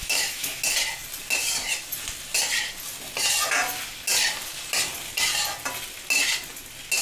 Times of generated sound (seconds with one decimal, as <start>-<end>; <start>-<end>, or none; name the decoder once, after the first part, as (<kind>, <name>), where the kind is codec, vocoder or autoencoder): 0.0-0.6 (autoencoder, DAC-VAE)